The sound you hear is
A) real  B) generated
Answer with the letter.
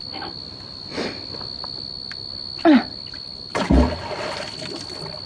A